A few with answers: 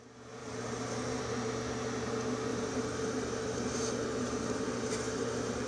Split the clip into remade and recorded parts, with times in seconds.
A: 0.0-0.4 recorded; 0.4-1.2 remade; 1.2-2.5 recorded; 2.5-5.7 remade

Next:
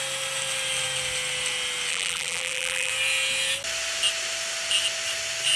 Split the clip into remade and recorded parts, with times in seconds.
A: 0.0-1.9 recorded; 1.9-2.9 remade; 2.9-5.6 recorded

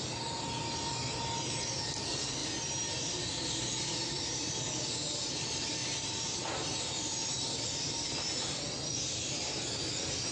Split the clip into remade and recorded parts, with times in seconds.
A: 0.0-10.3 recorded

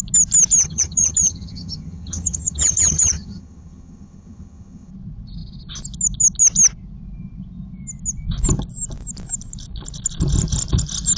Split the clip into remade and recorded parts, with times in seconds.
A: 0.0-0.6 recorded; 0.6-4.9 remade; 4.9-11.2 recorded

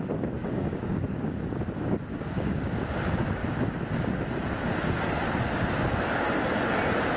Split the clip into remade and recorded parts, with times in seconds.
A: 0.0-0.4 recorded; 0.4-1.4 remade; 1.4-2.1 recorded; 2.1-2.7 remade; 2.7-7.2 recorded

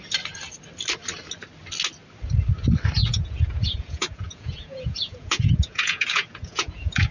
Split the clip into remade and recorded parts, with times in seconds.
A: 0.0-3.0 recorded; 3.0-7.1 remade

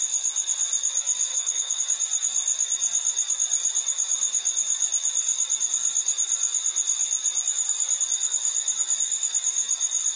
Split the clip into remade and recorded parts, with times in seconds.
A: 0.0-1.3 recorded; 1.3-1.8 remade; 1.8-10.2 recorded

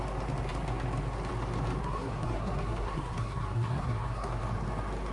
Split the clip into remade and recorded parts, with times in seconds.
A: 0.0-1.8 recorded; 1.8-4.4 remade; 4.4-5.1 recorded